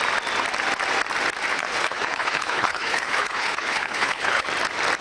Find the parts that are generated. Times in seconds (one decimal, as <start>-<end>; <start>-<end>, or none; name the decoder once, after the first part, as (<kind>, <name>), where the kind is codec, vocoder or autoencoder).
1.5-4.5 (codec, HILCodec)